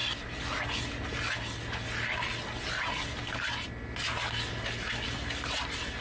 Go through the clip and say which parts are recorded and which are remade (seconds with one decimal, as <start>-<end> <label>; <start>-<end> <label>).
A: 0.0-6.0 recorded